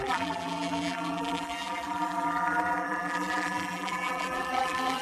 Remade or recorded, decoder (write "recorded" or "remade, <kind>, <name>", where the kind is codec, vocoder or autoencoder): remade, vocoder, BigVGAN v2